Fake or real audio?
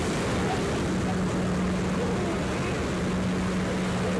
real